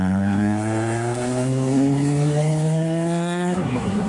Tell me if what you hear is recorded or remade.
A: remade